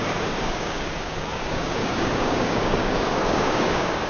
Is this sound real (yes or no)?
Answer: no